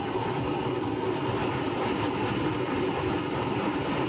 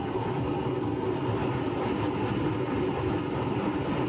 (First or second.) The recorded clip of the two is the second